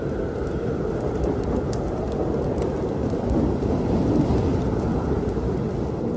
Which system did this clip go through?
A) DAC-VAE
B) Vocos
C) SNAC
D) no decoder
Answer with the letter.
D